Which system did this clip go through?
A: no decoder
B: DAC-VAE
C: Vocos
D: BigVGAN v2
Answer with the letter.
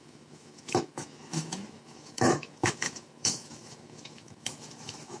B